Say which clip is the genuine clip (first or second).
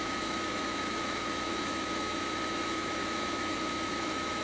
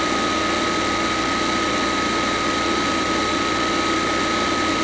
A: second